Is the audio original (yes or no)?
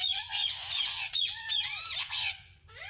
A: no